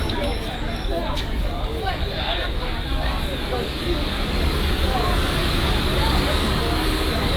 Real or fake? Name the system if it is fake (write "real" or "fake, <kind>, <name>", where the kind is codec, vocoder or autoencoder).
fake, codec, DAC